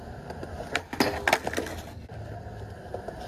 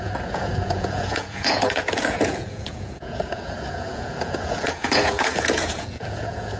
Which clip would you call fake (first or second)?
second